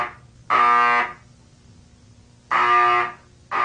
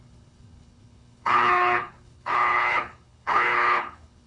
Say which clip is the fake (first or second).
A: second